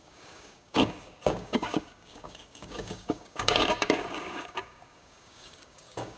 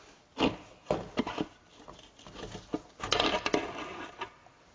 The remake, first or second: first